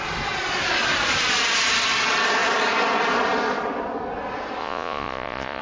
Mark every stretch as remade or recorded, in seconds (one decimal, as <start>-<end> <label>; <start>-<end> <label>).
0.0-4.6 recorded; 4.6-5.6 remade